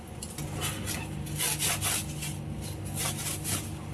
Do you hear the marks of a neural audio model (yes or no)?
no